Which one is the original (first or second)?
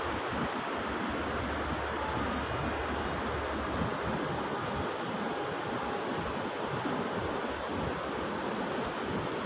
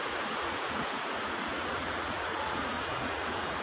first